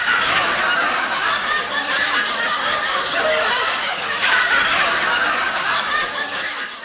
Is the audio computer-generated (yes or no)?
yes